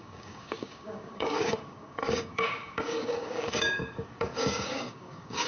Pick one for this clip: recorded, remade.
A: remade